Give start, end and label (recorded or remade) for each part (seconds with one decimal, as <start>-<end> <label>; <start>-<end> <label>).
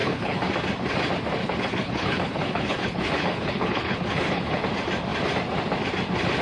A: 0.0-0.5 remade; 0.5-1.4 recorded; 1.4-4.6 remade; 4.6-6.4 recorded